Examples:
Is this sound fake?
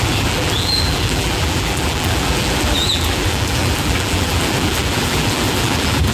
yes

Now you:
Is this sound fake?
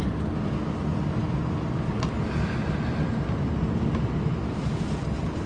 no